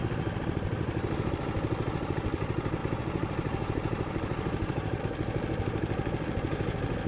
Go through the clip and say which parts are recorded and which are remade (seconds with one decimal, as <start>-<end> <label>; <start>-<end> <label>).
0.0-2.8 recorded; 2.8-5.0 remade; 5.0-7.1 recorded